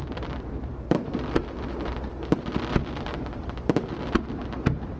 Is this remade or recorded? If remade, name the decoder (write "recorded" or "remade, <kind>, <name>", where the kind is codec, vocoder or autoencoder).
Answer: recorded